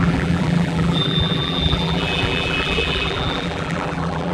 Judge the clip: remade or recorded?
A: remade